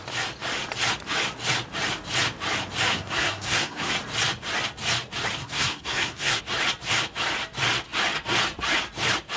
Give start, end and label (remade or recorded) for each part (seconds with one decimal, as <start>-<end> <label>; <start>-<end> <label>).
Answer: 0.0-2.9 recorded; 2.9-3.9 remade; 3.9-5.4 recorded; 5.4-6.4 remade; 6.4-9.4 recorded